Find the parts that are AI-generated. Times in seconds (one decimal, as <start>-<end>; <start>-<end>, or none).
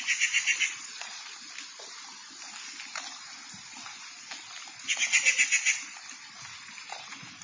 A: 0.5-1.3